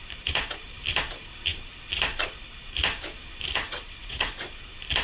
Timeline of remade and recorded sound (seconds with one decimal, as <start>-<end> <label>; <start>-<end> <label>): 0.0-3.6 recorded; 3.6-4.5 remade; 4.5-5.0 recorded